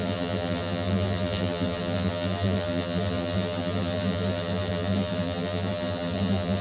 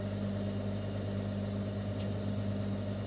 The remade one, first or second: first